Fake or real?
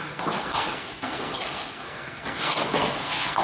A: fake